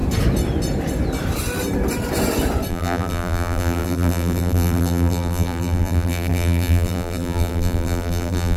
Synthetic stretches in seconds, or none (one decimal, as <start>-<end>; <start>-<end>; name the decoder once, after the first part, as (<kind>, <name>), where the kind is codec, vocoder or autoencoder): 2.7-8.6 (vocoder, BigVGAN v2)

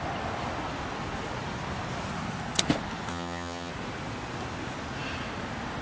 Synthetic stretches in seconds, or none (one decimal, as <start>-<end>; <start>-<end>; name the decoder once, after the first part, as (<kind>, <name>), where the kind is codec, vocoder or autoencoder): 3.1-3.7 (vocoder, HiFi-GAN)

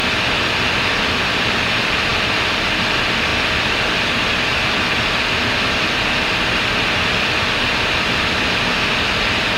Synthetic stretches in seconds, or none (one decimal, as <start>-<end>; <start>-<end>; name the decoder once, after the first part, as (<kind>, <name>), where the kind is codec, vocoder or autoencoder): none

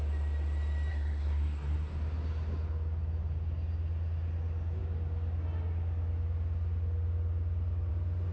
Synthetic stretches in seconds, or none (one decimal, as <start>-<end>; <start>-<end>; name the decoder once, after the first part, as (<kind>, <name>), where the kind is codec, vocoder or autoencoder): 0.9-1.9 (codec, SNAC)

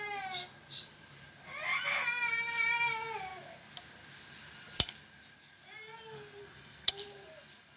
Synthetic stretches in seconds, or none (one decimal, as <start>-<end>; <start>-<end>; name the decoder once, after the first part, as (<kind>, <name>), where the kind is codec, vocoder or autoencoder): 6.4-6.9 (codec, SNAC)

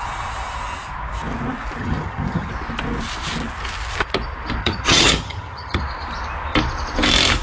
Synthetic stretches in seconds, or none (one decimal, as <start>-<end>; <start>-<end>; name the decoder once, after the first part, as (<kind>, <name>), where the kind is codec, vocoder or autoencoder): 1.8-2.5 (vocoder, HiFi-GAN); 4.6-5.8

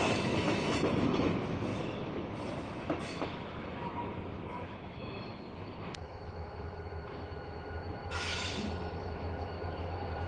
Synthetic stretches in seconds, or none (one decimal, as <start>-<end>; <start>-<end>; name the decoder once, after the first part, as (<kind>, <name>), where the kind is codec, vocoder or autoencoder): 0.0-10.3 (autoencoder, DAC-VAE)

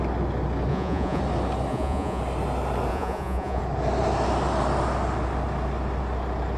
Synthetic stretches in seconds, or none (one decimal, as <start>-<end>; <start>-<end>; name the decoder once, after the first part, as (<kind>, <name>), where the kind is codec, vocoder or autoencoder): 0.7-1.2 (vocoder, Vocos); 1.7-2.2; 2.9-3.6